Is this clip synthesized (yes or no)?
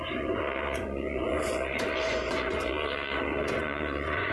yes